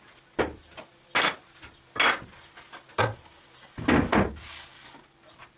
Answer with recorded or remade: recorded